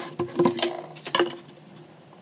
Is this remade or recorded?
recorded